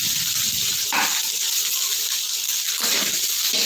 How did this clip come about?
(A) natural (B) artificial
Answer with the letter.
A